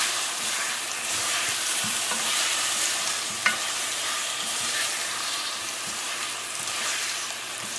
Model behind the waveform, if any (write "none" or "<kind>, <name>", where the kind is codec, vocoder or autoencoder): vocoder, BigVGAN v2